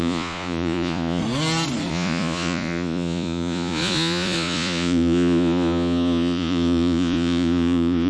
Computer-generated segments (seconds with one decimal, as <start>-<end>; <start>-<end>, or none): 0.0-1.2; 1.9-8.1

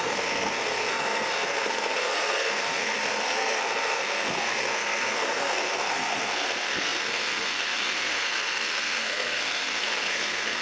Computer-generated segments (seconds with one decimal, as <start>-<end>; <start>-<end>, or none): 0.0-10.6

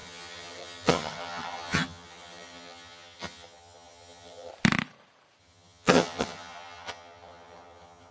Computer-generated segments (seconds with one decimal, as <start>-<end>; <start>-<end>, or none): 0.0-4.5; 5.4-8.1

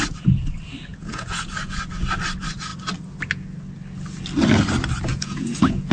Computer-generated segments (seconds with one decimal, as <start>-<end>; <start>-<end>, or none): 0.9-1.8; 5.1-5.9

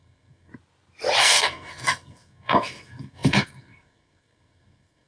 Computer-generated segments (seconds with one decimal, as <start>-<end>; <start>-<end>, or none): 0.0-0.5; 1.2-5.1

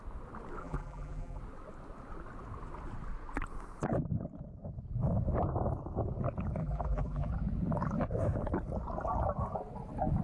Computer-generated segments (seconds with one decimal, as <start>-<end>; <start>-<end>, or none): 0.6-1.4; 6.6-7.3